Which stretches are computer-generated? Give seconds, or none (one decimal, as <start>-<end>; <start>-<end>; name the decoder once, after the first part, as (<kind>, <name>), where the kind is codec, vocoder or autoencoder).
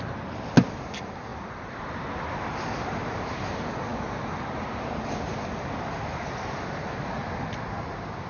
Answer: 1.3-2.4 (vocoder, BigVGAN v2)